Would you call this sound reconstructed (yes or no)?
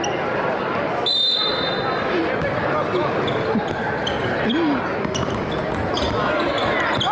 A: no